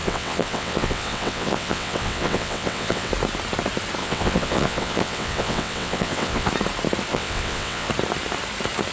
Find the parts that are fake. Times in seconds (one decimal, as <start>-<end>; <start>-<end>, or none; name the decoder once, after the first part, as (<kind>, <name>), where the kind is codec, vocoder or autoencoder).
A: 0.0-3.1 (vocoder, WaveNeXt); 4.0-6.5; 7.1-7.9